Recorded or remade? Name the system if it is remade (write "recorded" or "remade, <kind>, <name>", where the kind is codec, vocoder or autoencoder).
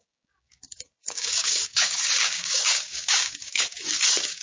remade, codec, DAC